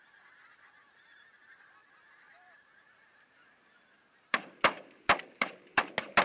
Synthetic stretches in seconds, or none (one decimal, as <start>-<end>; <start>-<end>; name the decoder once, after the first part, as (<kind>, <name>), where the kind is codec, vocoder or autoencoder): none